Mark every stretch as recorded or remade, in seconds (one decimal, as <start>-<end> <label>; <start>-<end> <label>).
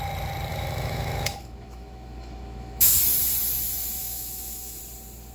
0.0-0.5 recorded; 0.5-3.0 remade; 3.0-4.0 recorded; 4.0-4.8 remade; 4.8-5.3 recorded